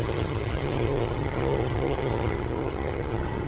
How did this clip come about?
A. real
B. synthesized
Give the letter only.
B